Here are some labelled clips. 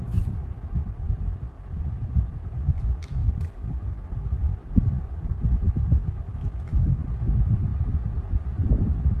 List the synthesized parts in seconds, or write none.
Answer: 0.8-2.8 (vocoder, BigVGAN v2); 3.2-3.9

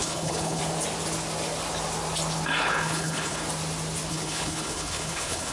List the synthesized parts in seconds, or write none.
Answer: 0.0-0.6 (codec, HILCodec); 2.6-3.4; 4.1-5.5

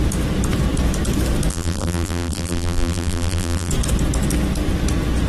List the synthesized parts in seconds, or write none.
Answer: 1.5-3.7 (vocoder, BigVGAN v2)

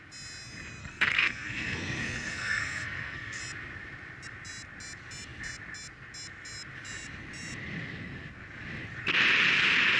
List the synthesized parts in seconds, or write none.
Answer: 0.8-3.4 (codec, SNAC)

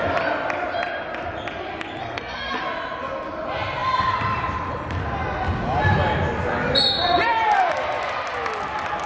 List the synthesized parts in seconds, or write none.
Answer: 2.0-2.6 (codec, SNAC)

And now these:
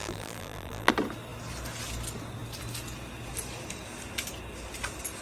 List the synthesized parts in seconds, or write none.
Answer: 0.0-0.9 (vocoder, BigVGAN v2)